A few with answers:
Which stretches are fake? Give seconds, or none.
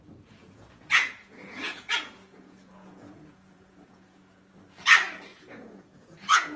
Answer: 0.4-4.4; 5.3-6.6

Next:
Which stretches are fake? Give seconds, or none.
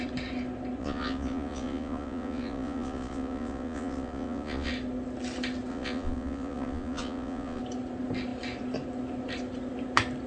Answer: 0.8-4.7; 5.7-7.6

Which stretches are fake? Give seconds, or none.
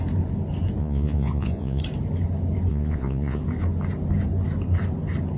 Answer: 0.8-1.8; 2.7-3.4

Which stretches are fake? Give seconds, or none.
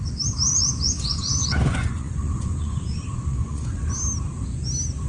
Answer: 0.6-3.7